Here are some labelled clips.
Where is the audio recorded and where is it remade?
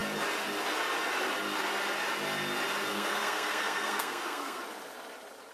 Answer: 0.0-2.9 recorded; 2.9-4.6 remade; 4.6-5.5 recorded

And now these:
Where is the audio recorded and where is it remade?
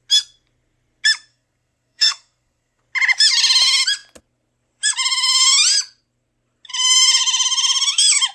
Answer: 0.0-1.3 recorded; 1.3-2.8 remade; 2.8-8.3 recorded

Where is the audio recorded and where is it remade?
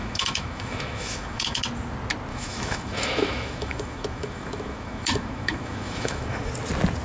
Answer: 0.0-1.6 remade; 1.6-2.3 recorded; 2.3-6.5 remade; 6.5-7.0 recorded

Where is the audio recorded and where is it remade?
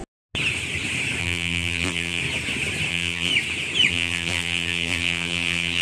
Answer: 0.0-1.2 recorded; 1.2-2.2 remade; 2.2-2.9 recorded; 2.9-3.3 remade; 3.3-3.9 recorded; 3.9-5.8 remade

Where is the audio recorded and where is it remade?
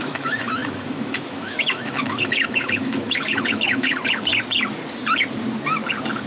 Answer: 0.0-4.3 remade; 4.3-6.3 recorded